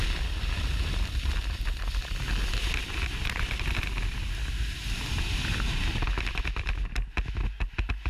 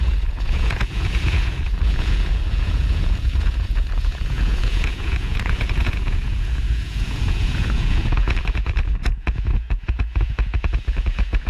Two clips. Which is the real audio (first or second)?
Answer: first